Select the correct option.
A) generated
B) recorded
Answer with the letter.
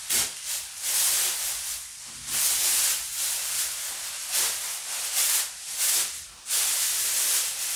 B